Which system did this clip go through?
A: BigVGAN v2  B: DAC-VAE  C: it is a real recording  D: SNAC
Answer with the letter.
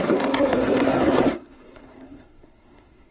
D